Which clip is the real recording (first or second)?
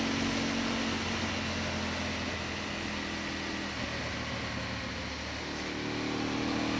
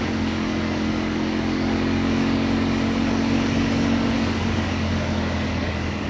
first